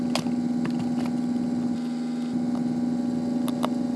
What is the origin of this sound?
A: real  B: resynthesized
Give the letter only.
A